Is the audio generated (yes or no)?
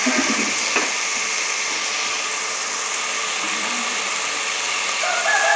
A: no